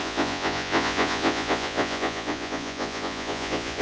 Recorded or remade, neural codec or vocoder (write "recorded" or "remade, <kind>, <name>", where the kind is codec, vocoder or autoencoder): remade, vocoder, Vocos